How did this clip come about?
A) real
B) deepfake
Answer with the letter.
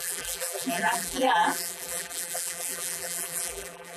B